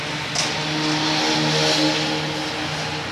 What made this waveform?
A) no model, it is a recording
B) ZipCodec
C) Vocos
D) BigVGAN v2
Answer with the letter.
A